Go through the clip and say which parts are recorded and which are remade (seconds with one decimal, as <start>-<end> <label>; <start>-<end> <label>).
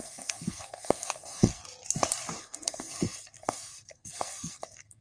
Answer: 0.0-1.6 remade; 1.6-2.4 recorded; 2.4-5.0 remade